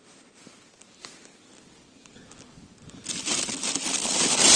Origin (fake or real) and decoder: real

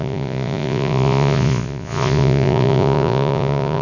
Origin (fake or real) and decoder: fake, vocoder, Vocos